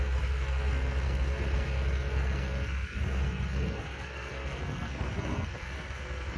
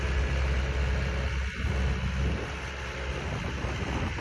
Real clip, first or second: second